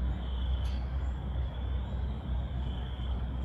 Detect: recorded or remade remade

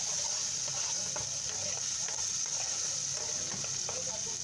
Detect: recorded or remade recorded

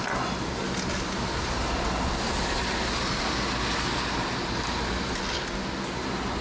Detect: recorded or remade recorded